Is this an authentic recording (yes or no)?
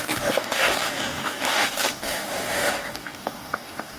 no